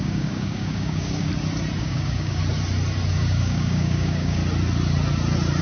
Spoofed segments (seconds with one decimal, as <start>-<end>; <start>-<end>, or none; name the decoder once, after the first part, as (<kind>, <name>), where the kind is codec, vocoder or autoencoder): 0.0-1.3 (codec, DAC); 1.8-2.4; 3.1-4.4